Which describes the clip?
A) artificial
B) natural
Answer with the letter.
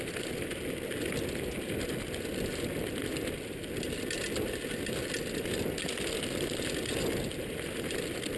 B